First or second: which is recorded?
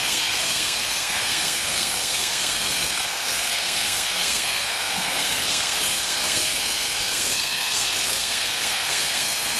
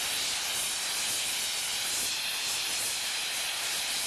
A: second